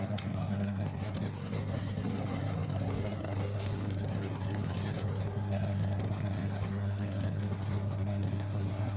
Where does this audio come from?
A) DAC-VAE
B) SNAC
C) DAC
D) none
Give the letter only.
B